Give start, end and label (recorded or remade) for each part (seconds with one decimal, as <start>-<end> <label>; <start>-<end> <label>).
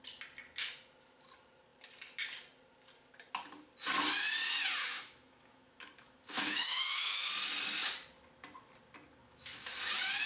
0.0-4.8 recorded; 4.8-7.3 remade; 7.3-9.2 recorded; 9.2-9.9 remade; 9.9-10.3 recorded